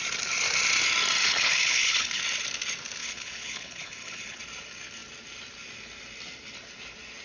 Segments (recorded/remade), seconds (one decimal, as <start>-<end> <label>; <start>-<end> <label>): 0.0-1.2 recorded; 1.2-2.2 remade; 2.2-3.0 recorded; 3.0-4.4 remade; 4.4-7.2 recorded